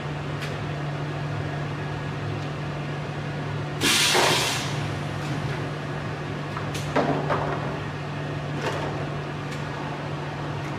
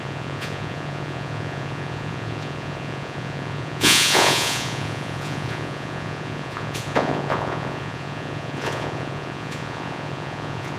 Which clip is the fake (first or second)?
second